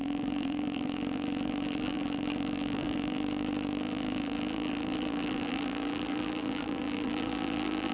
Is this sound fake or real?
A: fake